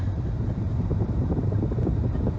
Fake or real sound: fake